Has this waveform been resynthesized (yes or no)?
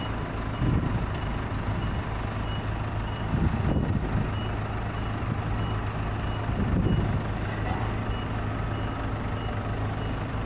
no